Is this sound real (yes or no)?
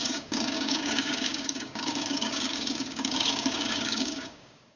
no